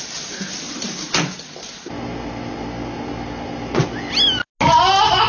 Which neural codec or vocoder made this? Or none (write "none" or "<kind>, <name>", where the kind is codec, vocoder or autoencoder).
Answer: none